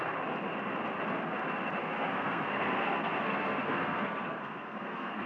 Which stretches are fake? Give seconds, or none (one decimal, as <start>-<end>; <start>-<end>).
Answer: 1.8-5.3